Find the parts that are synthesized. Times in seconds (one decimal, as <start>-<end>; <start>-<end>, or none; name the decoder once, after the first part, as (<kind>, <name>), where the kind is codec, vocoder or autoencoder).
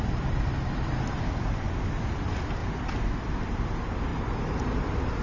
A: 4.1-4.7 (vocoder, BigVGAN v2)